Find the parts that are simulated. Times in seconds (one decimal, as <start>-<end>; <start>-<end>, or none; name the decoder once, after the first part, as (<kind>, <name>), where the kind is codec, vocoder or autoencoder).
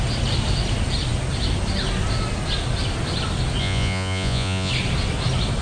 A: 3.6-4.7 (vocoder, Vocos)